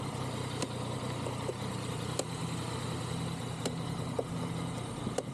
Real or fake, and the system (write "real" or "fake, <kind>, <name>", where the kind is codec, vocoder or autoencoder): real